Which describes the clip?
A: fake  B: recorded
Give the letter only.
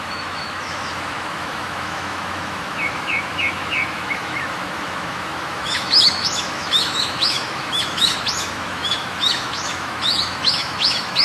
A